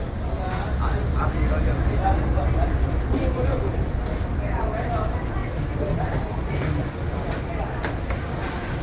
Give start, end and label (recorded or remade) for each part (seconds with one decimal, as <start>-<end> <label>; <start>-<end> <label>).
0.0-8.8 recorded

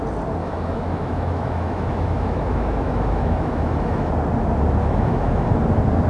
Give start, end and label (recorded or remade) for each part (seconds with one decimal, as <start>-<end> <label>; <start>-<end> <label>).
0.0-0.4 recorded; 0.4-4.1 remade; 4.1-4.8 recorded; 4.8-5.5 remade; 5.5-6.1 recorded